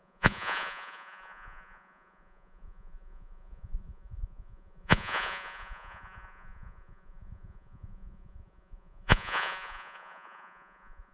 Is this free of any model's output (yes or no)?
no